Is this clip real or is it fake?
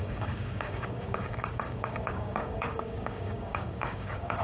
fake